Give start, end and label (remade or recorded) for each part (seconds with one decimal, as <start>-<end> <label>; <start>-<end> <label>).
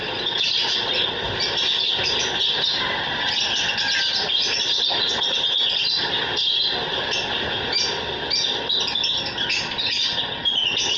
0.0-11.0 recorded